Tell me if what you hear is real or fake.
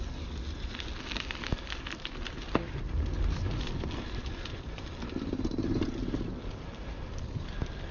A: real